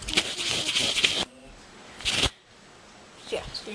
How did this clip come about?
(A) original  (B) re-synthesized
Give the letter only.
A